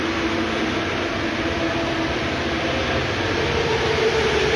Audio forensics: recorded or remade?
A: recorded